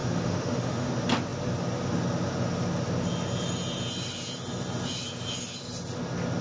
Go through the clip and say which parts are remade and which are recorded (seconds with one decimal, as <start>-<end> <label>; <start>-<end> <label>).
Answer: 0.0-0.9 remade; 0.9-6.4 recorded